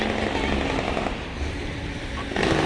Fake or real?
real